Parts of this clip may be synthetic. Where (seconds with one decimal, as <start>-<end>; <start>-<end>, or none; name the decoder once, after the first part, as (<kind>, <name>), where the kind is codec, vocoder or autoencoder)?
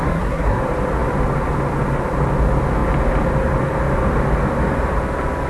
0.0-0.6 (codec, SNAC)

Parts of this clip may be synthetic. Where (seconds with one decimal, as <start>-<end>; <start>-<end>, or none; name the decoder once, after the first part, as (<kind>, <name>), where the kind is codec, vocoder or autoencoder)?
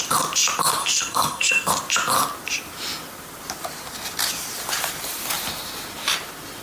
0.8-1.7 (codec, SNAC)